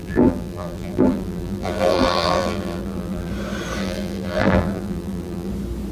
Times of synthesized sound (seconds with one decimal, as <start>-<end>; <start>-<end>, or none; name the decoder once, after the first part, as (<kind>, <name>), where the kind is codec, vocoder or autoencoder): 0.0-3.3 (vocoder, BigVGAN v2); 3.8-5.5